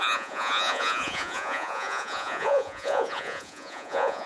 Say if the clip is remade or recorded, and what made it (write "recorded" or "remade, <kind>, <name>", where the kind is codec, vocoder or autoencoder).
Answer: remade, vocoder, Vocos